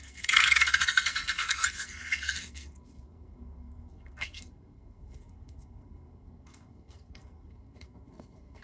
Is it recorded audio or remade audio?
remade